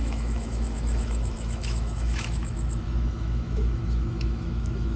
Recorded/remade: remade